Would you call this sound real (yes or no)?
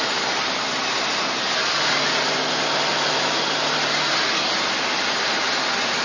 yes